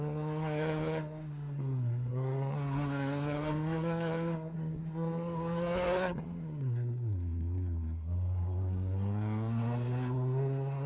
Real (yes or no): no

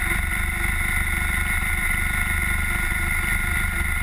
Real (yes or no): yes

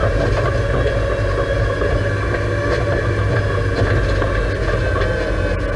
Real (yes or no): yes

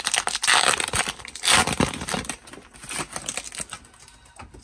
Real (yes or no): yes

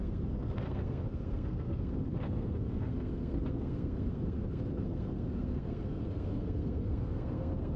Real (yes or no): no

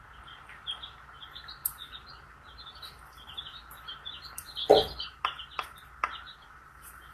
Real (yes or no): yes